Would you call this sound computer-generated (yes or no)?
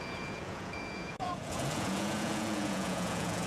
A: yes